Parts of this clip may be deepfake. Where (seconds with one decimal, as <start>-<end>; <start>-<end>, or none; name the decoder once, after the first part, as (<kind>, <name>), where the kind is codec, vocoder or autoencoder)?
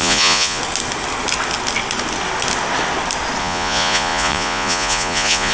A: 0.0-0.6 (vocoder, Vocos); 3.4-5.5